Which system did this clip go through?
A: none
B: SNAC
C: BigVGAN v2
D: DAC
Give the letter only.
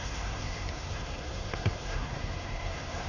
B